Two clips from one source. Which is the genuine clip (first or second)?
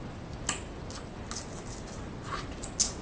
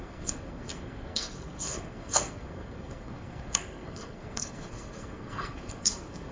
first